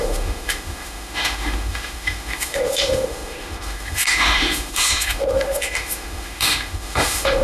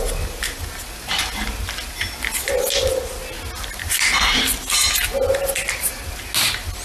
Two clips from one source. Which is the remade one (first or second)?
first